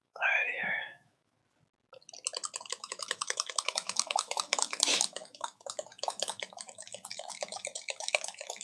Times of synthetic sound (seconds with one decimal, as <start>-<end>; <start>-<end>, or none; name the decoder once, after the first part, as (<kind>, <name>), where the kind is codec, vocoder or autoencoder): 0.0-1.4 (autoencoder, DAC-VAE); 2.6-8.6